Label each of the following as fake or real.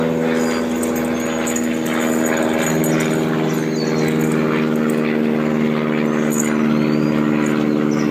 real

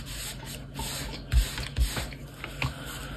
real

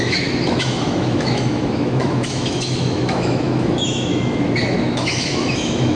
fake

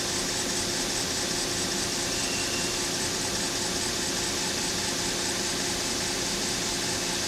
real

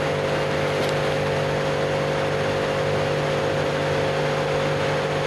real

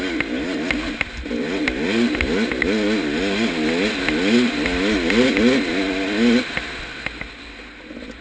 real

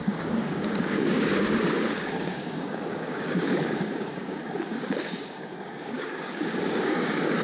fake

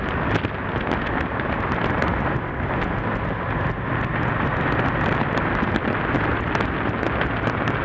real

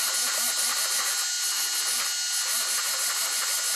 real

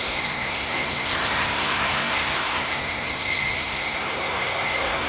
fake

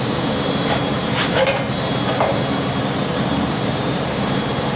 fake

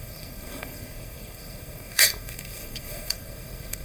fake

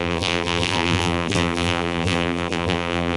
fake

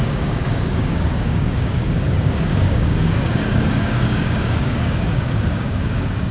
fake